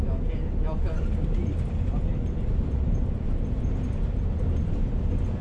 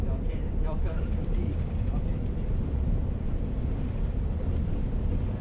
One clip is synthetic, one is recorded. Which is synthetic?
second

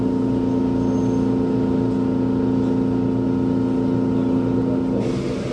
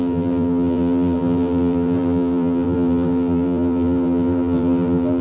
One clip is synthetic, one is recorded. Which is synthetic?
second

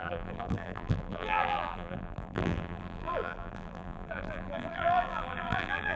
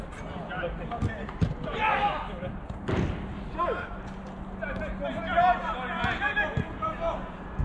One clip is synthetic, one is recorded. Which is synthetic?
first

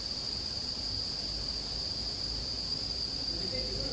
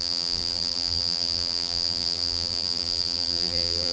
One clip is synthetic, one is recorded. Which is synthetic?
second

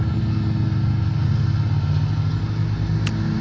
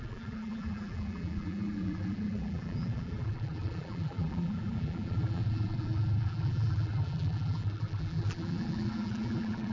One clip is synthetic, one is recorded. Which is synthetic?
second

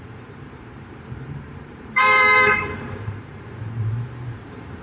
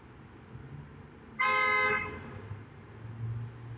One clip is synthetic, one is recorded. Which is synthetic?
first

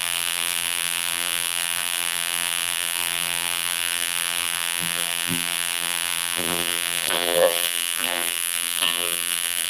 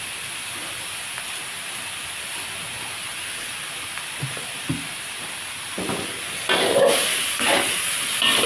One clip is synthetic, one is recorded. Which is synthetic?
first